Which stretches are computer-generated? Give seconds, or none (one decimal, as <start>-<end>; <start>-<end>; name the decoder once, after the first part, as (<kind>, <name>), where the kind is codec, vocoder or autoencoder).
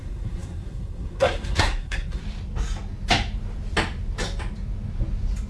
0.0-2.2 (codec, SNAC)